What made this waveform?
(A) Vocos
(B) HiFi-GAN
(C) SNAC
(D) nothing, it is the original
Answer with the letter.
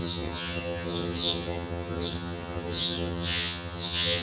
B